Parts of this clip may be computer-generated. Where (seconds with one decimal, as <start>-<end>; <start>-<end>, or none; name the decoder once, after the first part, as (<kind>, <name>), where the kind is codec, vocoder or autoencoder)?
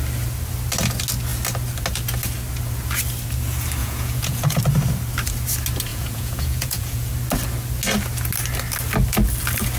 3.8-4.6 (vocoder, Vocos); 5.9-7.1